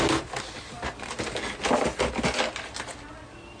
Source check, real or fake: real